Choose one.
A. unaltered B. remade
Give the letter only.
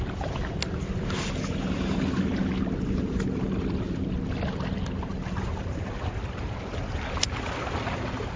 A